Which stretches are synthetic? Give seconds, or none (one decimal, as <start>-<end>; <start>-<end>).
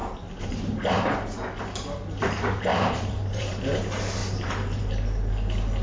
2.7-3.6; 4.2-4.9